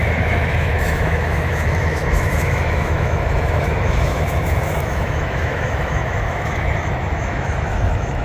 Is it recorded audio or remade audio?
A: remade